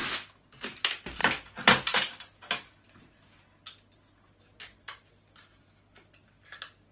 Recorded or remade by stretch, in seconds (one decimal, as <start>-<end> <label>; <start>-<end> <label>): 0.0-6.9 recorded